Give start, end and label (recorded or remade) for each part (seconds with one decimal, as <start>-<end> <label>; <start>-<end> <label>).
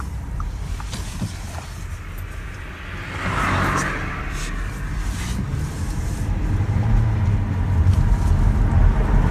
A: 0.0-9.3 recorded